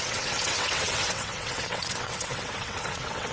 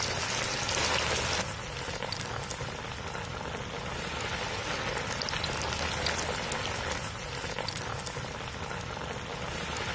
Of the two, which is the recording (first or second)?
second